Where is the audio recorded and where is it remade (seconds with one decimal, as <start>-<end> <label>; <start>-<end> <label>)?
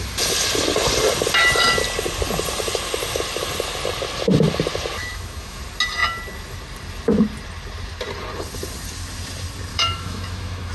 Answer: 0.0-5.0 recorded; 5.0-5.6 remade; 5.6-9.7 recorded; 9.7-10.7 remade